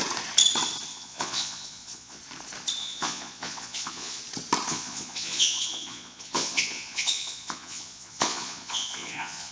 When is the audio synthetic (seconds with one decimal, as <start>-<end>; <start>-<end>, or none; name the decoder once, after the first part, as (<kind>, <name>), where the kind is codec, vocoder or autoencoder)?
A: 0.9-2.2 (vocoder, Vocos); 2.8-4.2; 4.7-9.5